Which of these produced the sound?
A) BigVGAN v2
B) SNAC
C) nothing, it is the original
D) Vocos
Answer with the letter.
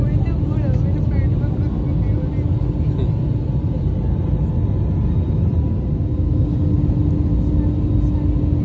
C